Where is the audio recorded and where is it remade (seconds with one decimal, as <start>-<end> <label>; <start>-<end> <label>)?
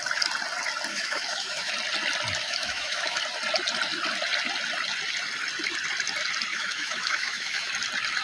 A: 0.0-0.9 recorded; 0.9-1.7 remade; 1.7-2.4 recorded; 2.4-3.2 remade; 3.2-6.5 recorded; 6.5-7.7 remade; 7.7-8.2 recorded